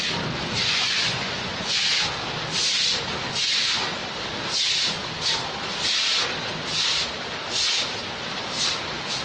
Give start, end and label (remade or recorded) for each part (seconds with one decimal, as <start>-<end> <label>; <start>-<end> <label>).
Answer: 0.0-0.6 recorded; 0.6-1.8 remade; 1.8-9.2 recorded